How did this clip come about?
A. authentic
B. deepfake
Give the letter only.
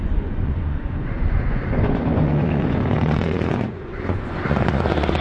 B